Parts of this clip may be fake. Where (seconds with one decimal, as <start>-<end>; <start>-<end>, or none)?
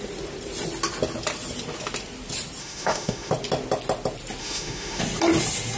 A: 2.6-3.3; 4.4-5.0